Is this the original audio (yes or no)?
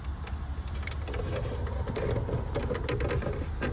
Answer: yes